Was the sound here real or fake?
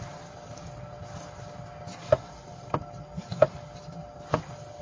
real